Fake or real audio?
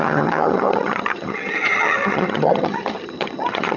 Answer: fake